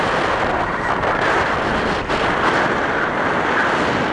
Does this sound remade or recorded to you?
recorded